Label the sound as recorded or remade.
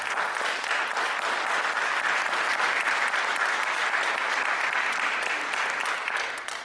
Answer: recorded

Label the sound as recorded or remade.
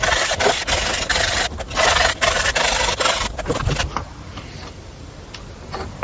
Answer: recorded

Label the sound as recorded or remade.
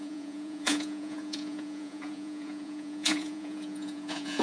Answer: remade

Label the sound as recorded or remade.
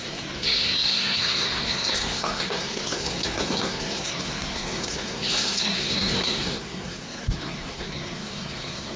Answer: remade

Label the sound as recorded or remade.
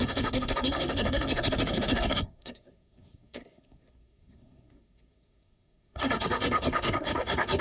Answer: remade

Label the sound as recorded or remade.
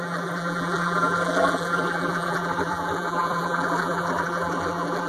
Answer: remade